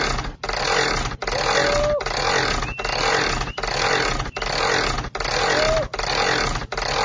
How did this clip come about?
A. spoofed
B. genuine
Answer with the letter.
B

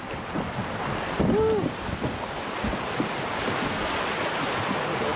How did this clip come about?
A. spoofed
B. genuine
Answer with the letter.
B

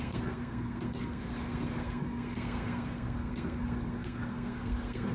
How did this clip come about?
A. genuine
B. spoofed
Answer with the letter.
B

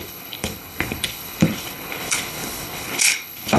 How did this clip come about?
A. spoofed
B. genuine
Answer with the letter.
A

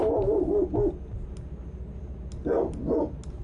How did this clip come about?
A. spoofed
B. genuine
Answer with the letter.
B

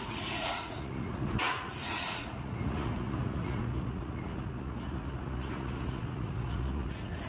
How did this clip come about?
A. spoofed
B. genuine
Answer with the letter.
A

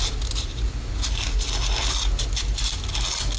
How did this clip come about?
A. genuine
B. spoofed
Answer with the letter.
A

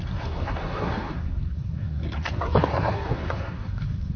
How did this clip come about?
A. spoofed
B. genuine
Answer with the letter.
A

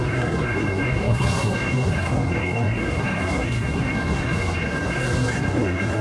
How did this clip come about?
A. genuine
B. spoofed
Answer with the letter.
B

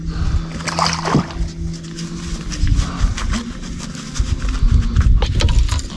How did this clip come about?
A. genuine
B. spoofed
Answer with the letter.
A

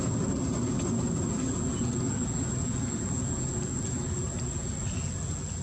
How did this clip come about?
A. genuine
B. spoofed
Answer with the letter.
A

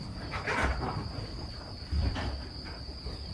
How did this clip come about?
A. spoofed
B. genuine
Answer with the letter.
A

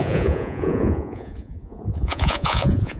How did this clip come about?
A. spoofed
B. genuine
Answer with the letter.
A